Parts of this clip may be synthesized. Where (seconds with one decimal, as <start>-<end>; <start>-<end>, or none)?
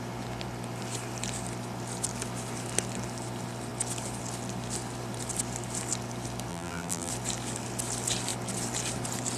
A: 6.5-7.1